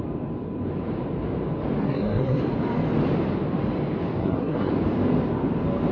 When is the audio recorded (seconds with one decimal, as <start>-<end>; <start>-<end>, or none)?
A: 0.0-1.8; 2.4-4.2; 4.7-5.9